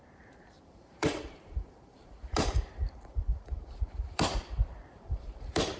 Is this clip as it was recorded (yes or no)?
no